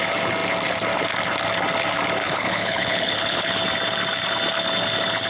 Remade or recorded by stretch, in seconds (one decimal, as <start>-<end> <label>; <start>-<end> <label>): 0.0-2.2 recorded; 2.2-3.5 remade; 3.5-5.3 recorded